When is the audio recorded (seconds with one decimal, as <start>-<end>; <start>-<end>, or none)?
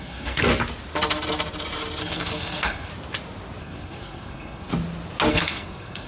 0.5-2.0; 2.9-3.6; 4.7-5.3